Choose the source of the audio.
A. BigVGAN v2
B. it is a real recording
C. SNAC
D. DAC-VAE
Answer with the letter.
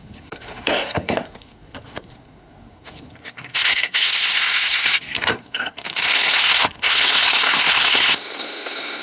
C